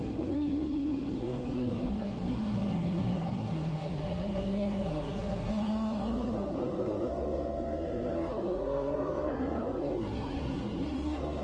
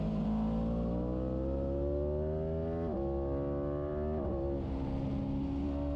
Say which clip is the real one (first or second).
second